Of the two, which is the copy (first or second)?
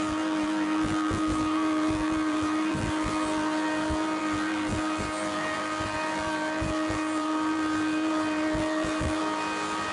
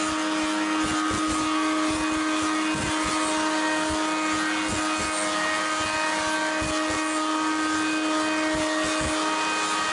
first